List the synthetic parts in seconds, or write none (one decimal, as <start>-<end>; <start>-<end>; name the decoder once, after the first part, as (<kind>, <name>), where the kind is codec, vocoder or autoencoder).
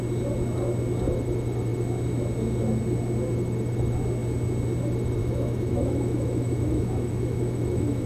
5.2-8.1 (autoencoder, DAC-VAE)